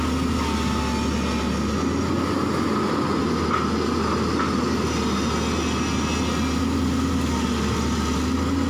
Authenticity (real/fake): real